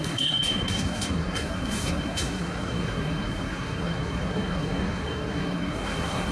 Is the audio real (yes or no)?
no